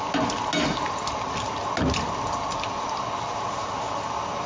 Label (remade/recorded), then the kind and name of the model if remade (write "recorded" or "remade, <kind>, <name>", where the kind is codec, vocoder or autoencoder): recorded